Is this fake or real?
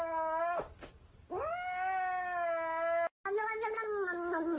real